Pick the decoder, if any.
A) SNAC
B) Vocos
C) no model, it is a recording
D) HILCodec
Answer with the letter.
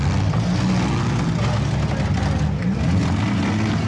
C